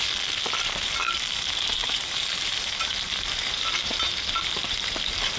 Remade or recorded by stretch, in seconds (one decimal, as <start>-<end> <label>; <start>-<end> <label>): 0.0-1.8 recorded; 1.8-5.0 remade; 5.0-5.4 recorded